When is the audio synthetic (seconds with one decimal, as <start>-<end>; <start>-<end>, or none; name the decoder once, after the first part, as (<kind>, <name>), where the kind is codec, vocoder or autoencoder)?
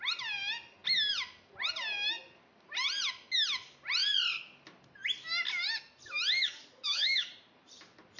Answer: 6.4-7.3 (codec, DAC)